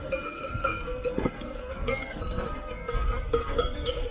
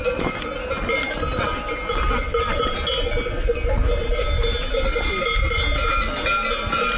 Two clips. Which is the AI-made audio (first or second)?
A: first